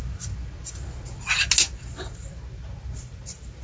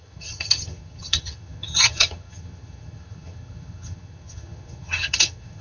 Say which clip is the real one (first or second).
first